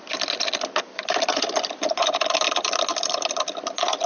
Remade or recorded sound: recorded